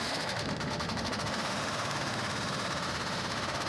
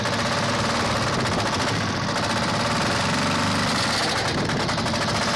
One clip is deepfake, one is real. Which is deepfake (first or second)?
first